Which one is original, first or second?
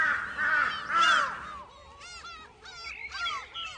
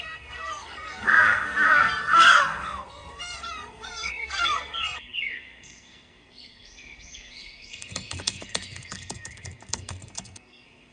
first